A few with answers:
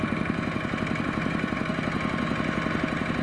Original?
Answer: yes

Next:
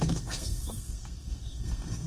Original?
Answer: no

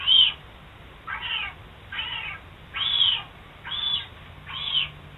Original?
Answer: yes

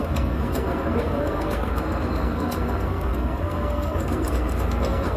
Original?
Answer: no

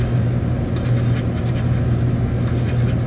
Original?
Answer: yes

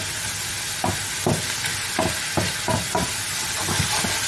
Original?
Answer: yes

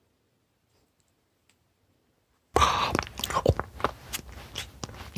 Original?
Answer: yes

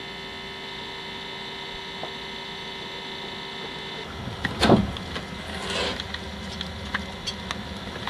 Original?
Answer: yes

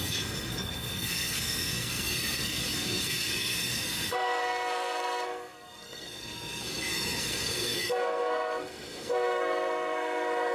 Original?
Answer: no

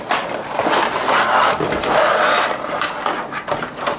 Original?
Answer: yes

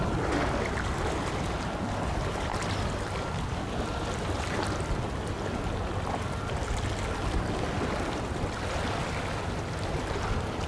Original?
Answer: yes